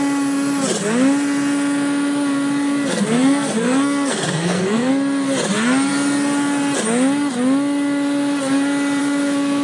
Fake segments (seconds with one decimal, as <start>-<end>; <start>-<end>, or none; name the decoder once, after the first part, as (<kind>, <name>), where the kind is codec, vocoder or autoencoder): 2.9-4.9 (codec, SNAC)

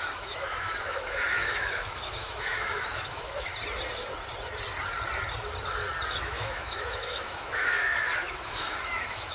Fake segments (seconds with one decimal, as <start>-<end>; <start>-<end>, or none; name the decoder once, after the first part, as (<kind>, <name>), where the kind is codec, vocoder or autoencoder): 0.0-3.5 (autoencoder, DAC-VAE); 6.2-9.3

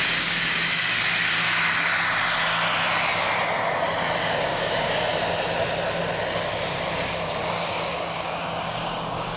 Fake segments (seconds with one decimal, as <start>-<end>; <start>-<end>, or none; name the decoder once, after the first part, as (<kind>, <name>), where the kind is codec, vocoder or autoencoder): 0.0-1.9 (codec, DAC); 4.2-5.1; 7.4-9.4

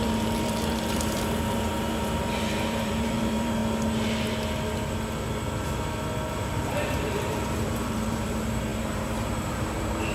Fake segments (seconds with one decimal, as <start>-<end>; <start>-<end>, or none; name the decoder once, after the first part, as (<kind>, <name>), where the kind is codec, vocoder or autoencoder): 0.0-3.6 (vocoder, BigVGAN v2); 6.3-10.1

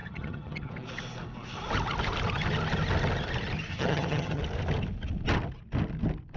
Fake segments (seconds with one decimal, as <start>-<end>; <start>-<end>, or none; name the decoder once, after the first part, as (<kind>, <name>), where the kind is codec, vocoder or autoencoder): 0.0-0.7 (vocoder, HiFi-GAN); 3.7-4.4

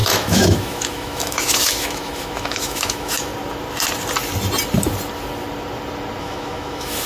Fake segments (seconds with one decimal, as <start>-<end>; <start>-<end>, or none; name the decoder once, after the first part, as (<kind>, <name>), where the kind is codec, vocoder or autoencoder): 0.0-3.3 (autoencoder, DAC-VAE); 6.2-7.1

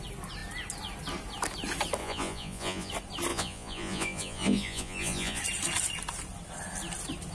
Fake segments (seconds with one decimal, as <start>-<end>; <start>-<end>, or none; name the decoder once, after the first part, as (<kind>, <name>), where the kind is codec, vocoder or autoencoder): 2.0-2.9 (vocoder, Vocos); 3.3-5.4